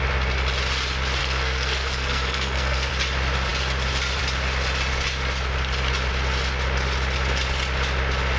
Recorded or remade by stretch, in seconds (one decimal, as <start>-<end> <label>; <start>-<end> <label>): 0.0-1.2 recorded; 1.2-2.9 remade; 2.9-8.4 recorded